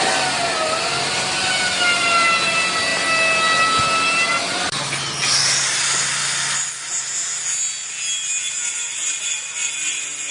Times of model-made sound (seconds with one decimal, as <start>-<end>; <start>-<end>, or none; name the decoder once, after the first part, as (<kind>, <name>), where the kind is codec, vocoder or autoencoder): none